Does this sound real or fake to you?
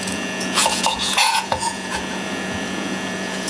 fake